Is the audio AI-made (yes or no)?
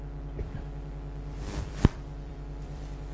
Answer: yes